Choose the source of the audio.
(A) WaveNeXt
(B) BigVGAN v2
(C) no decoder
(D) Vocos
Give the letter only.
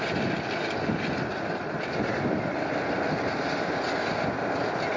C